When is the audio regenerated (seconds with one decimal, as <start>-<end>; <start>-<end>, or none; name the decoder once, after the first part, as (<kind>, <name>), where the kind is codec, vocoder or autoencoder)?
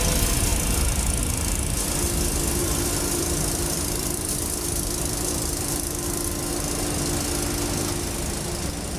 2.6-6.5 (vocoder, BigVGAN v2)